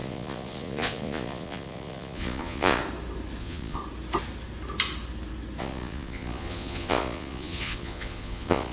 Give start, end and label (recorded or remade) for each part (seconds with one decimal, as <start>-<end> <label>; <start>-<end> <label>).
0.0-2.8 remade; 2.8-3.4 recorded; 3.4-3.8 remade; 3.8-5.6 recorded; 5.6-8.7 remade